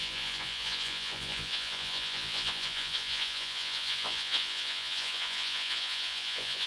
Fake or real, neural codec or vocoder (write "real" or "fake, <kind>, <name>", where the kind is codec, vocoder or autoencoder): fake, vocoder, Vocos